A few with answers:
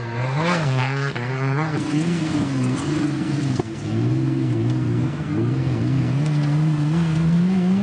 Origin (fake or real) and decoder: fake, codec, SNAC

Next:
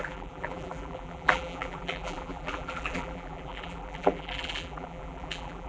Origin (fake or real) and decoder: fake, vocoder, BigVGAN v2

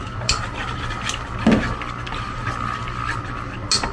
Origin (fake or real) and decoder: real